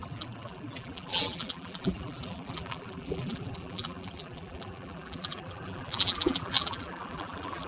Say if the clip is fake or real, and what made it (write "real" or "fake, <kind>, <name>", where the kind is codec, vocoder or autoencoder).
fake, vocoder, BigVGAN v2